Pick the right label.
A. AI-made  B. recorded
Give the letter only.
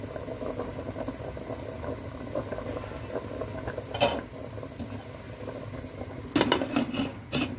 B